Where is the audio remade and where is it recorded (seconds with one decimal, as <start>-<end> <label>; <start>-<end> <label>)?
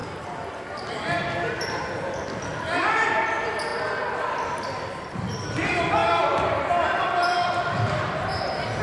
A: 0.0-3.7 remade; 3.7-5.1 recorded; 5.1-8.8 remade